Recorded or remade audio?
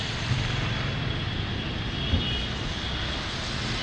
recorded